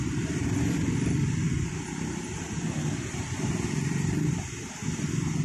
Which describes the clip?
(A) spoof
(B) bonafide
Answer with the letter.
A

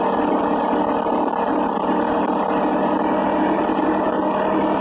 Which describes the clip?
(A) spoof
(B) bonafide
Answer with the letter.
B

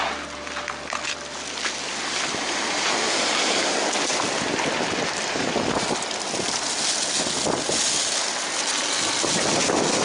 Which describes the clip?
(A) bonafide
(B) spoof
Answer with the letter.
A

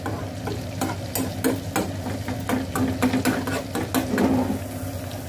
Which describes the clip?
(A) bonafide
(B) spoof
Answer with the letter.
A